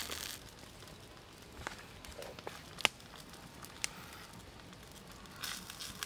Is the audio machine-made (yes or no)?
no